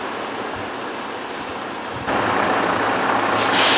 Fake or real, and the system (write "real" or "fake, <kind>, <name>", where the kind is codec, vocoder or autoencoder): real